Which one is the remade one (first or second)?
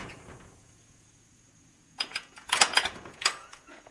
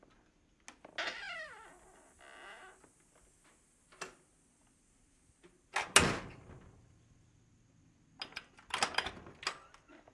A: first